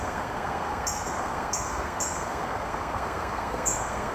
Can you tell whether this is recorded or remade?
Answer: remade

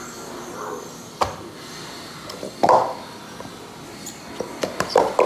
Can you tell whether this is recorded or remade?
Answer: recorded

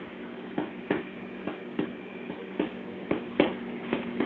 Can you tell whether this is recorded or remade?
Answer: remade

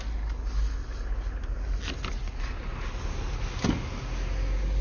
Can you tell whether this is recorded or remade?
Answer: recorded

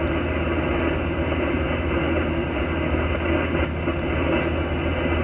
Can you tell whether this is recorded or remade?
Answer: recorded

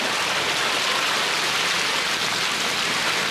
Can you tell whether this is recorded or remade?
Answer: recorded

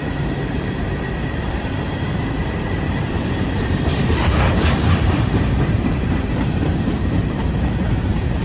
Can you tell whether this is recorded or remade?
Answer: remade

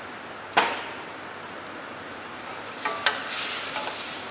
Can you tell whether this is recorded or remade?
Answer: recorded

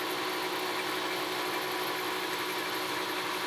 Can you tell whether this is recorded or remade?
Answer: recorded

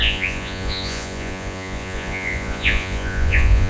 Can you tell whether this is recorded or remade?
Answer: remade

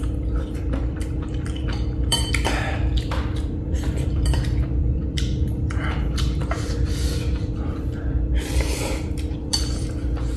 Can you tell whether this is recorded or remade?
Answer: remade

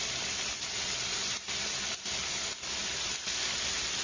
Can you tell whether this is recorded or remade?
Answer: remade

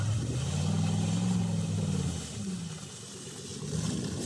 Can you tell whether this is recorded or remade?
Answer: recorded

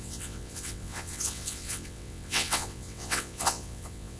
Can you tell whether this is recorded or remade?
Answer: remade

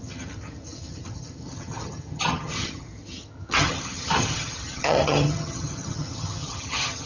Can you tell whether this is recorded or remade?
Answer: remade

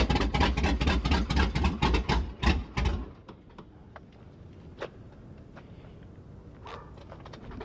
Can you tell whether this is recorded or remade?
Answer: recorded